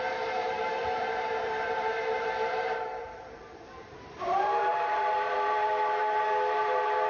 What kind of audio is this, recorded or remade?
remade